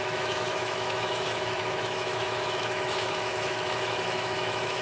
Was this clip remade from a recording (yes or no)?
yes